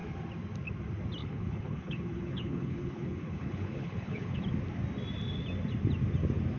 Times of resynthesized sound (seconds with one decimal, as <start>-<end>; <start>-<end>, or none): 1.2-4.4